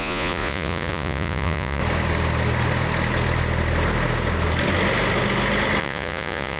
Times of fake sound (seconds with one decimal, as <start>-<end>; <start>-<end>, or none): 0.0-1.8; 5.8-6.6